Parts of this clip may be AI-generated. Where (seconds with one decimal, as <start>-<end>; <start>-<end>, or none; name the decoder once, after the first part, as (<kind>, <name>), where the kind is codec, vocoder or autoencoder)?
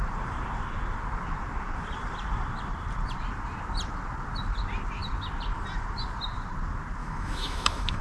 7.0-8.0 (autoencoder, DAC-VAE)